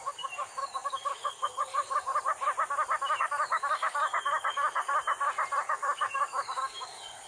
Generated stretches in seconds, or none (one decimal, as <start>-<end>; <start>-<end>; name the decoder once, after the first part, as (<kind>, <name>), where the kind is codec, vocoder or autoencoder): 0.0-2.1 (codec, DAC); 3.2-4.9; 5.6-7.3